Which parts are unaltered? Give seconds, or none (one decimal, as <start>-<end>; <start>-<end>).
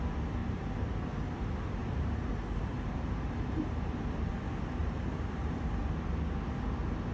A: 0.0-0.4; 1.1-1.8; 2.3-2.7; 4.3-4.8; 5.8-7.1